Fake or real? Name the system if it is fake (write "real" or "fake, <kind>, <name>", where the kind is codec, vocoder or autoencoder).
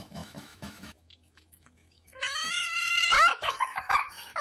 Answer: fake, autoencoder, DAC-VAE